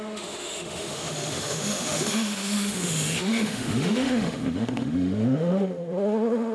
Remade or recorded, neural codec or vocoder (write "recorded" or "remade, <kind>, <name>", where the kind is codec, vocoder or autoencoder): remade, autoencoder, DAC-VAE